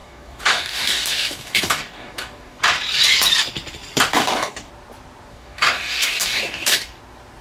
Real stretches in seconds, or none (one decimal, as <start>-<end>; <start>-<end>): 2.6-4.1; 4.7-5.3; 7.0-7.4